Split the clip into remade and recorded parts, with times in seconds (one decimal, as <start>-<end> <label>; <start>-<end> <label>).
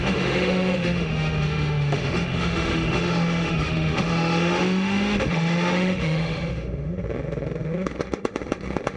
0.0-9.0 remade